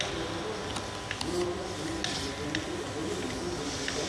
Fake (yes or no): no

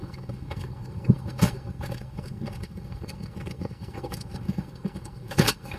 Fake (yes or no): yes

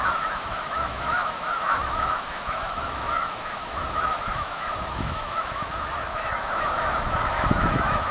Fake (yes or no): yes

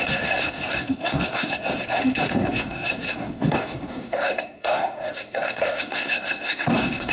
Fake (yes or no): yes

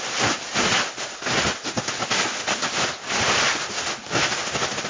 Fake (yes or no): no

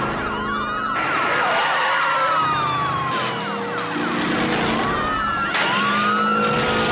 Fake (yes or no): no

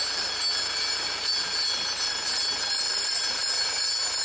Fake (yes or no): no